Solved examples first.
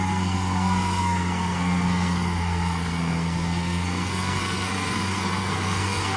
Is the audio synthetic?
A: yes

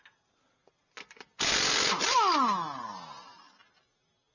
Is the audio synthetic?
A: no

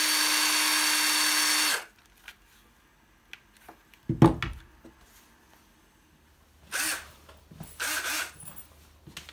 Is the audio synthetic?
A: no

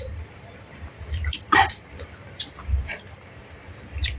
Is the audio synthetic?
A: yes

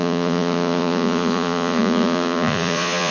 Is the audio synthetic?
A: yes